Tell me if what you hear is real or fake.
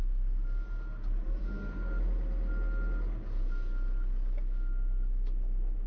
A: real